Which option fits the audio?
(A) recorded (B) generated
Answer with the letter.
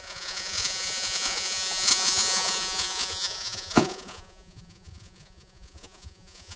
B